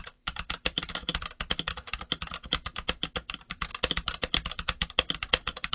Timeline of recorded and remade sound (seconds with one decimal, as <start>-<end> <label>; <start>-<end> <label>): 0.0-1.1 remade; 1.1-3.1 recorded; 3.1-3.7 remade; 3.7-5.3 recorded; 5.3-5.7 remade